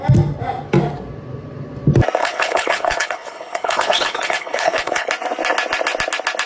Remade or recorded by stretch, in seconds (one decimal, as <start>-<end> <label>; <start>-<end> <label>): 0.0-2.2 recorded; 2.2-5.1 remade; 5.1-6.5 recorded